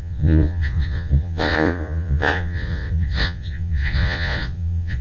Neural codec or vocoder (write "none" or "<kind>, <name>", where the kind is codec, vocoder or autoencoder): vocoder, Vocos